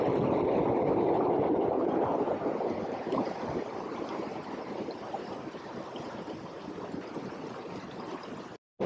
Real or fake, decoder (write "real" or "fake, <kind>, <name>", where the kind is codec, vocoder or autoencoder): real